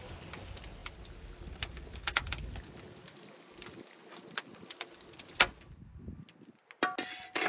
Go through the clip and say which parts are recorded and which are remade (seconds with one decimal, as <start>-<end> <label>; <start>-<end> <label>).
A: 0.0-7.5 recorded